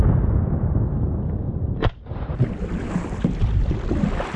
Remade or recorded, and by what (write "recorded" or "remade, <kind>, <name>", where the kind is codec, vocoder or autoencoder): recorded